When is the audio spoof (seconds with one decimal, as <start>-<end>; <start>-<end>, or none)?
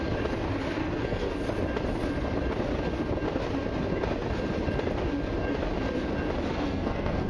0.8-1.3; 6.5-7.3